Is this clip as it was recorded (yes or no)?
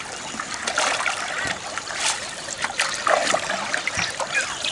yes